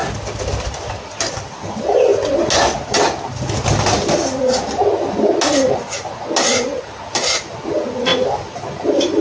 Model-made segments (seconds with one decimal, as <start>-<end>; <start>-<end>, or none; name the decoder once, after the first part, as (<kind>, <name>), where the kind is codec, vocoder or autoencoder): 0.0-2.1 (vocoder, BigVGAN v2); 3.4-4.8; 7.5-9.2